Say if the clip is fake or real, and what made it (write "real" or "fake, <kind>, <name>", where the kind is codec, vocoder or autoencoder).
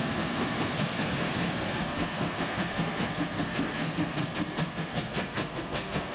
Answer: fake, codec, SNAC